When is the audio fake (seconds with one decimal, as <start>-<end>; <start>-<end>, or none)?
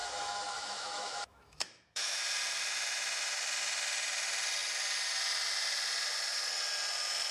0.0-2.2